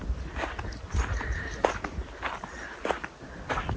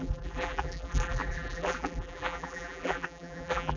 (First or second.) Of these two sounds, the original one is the first